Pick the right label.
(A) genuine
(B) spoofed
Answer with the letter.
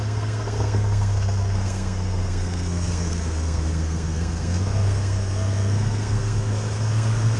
B